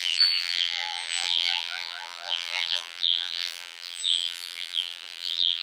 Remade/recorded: remade